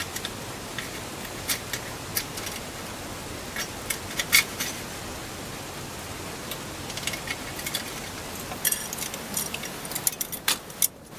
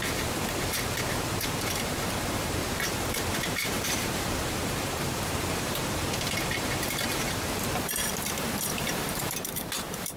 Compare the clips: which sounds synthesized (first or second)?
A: second